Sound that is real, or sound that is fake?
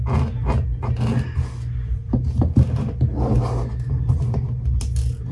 real